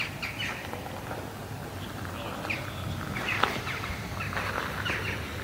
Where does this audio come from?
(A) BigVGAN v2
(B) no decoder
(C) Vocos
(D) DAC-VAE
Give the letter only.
B